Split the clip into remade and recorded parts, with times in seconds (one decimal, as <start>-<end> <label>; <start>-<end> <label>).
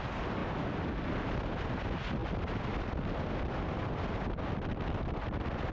0.0-5.7 recorded